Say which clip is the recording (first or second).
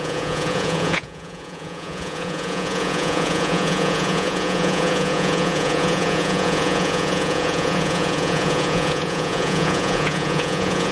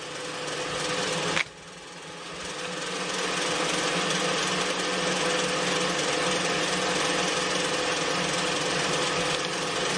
second